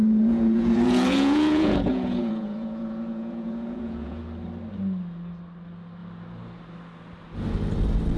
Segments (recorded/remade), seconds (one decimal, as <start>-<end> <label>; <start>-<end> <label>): 0.0-4.2 remade; 4.2-8.2 recorded